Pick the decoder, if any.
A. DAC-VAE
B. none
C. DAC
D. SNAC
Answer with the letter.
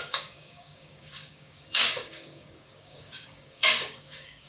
C